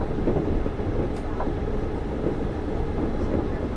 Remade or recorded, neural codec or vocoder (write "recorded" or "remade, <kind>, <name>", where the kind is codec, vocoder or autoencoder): recorded